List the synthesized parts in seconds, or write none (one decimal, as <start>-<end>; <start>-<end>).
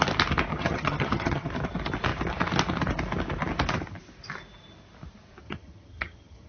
0.5-1.5; 5.4-6.5